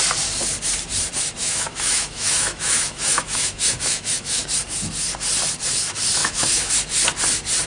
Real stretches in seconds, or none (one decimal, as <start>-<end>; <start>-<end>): 0.0-1.4; 4.4-6.2; 6.7-7.7